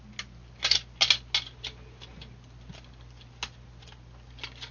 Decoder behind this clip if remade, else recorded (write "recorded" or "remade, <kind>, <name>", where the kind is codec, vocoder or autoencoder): recorded